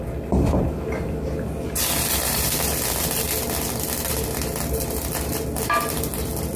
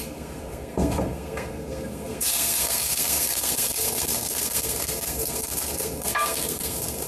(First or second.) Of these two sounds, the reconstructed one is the second